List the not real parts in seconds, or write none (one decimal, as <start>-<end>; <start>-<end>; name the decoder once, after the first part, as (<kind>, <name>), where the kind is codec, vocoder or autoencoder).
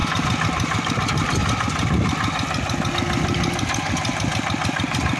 0.9-1.4 (vocoder, BigVGAN v2); 2.9-5.2